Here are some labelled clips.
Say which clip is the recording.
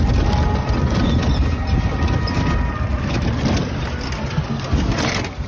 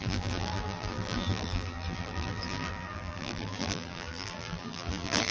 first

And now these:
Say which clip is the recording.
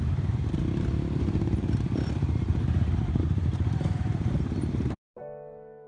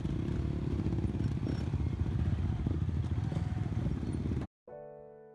second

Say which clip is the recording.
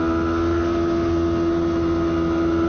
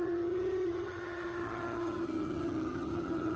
first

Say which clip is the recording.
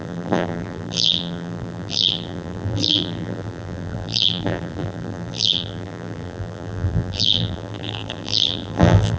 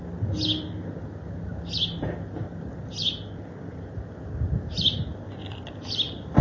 second